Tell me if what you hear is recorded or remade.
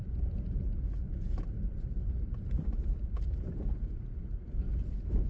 remade